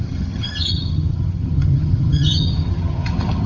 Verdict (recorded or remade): remade